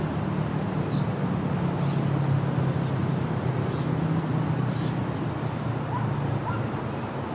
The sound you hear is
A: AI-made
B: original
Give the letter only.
B